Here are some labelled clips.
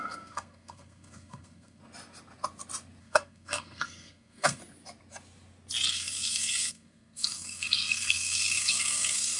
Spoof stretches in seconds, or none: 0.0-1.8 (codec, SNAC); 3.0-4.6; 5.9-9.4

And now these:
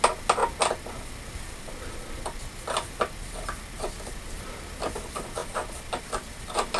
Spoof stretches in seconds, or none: none

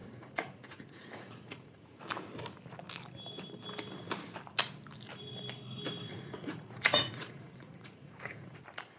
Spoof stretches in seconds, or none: 0.0-2.0 (vocoder, Vocos); 6.1-8.6